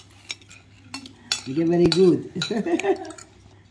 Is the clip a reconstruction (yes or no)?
no